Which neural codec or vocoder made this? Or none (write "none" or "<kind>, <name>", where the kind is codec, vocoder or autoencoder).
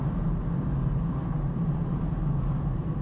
none